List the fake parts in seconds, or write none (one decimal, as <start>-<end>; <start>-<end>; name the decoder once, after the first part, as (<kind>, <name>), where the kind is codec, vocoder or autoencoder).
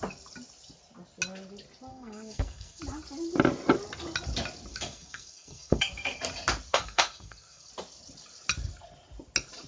1.9-2.8 (codec, SNAC); 4.7-6.2; 6.7-7.7